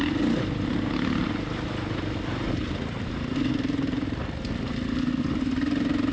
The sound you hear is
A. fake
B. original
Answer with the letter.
B